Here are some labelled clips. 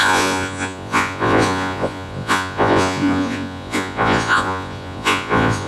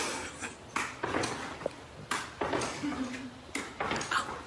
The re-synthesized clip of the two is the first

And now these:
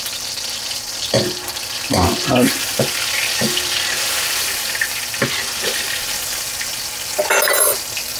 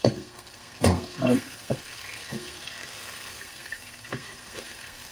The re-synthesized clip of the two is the second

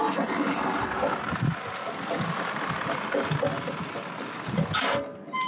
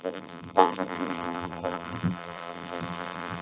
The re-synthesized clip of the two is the second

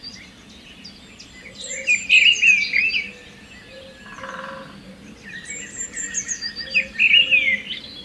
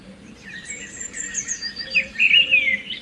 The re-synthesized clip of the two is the second